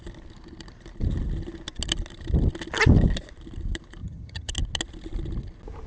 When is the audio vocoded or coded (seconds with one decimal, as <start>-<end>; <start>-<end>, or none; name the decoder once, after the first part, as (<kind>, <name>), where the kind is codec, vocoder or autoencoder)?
4.0-4.5 (vocoder, HiFi-GAN)